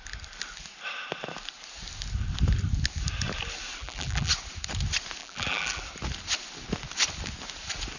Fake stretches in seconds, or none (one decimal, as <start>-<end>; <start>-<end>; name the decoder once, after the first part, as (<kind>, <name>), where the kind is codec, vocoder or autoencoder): 3.8-4.3 (vocoder, BigVGAN v2); 5.2-5.8